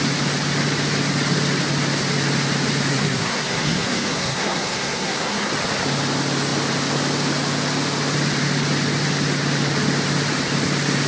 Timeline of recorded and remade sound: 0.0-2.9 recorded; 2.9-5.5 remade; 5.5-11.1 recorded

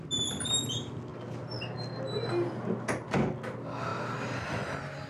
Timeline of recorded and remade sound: 0.0-5.1 recorded

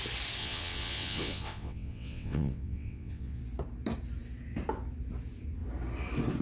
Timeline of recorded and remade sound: 0.0-0.4 recorded; 0.4-3.4 remade; 3.4-6.4 recorded